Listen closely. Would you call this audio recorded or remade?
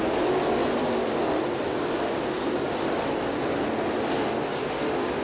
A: recorded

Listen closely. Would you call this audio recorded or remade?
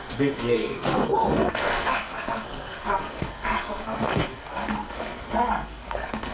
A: remade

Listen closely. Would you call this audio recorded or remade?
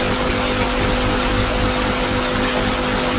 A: recorded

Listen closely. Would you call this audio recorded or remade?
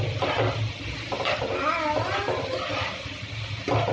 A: recorded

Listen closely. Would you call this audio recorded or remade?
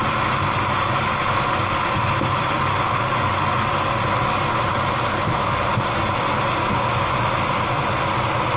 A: recorded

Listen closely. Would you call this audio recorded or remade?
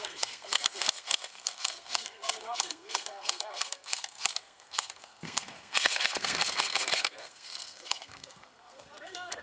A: remade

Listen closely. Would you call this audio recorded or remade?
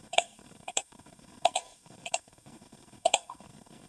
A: remade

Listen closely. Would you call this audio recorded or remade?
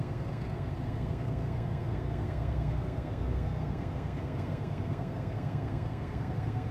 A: remade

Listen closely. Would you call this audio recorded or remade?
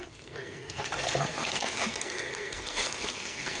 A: remade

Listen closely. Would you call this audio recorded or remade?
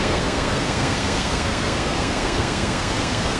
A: remade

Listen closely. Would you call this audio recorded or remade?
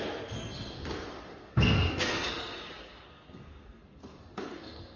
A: remade